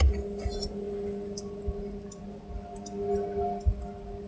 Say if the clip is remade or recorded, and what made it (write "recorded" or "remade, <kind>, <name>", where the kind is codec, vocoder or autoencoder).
recorded